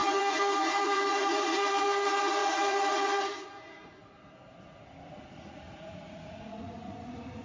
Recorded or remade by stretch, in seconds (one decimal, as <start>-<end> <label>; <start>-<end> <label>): 0.0-7.4 remade